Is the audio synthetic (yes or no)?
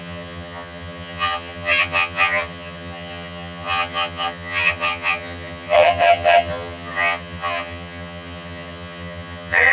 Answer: yes